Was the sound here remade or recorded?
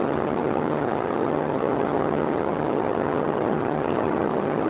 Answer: remade